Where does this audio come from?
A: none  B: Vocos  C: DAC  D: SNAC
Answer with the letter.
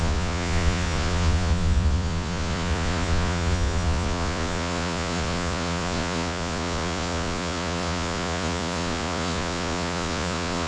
B